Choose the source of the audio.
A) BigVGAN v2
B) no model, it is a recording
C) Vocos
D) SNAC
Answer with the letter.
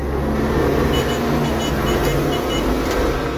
B